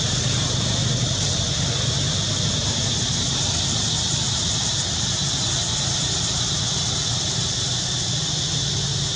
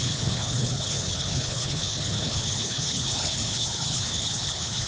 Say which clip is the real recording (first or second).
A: first